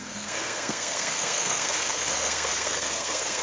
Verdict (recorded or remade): remade